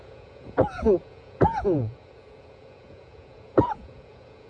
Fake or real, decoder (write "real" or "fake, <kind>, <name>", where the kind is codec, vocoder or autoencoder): fake, vocoder, Vocos